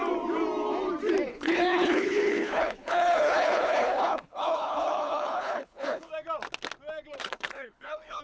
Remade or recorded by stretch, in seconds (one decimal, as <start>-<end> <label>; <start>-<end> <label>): 0.0-1.3 recorded; 1.3-6.1 remade; 6.1-7.2 recorded; 7.2-8.2 remade